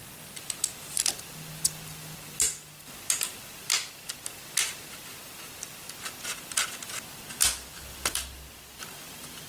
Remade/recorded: recorded